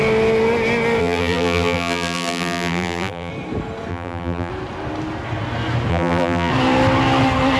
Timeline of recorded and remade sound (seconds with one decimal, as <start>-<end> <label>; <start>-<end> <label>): 0.0-1.0 recorded; 1.0-3.3 remade; 3.3-3.9 recorded; 3.9-4.5 remade; 4.5-5.9 recorded; 5.9-6.5 remade; 6.5-7.6 recorded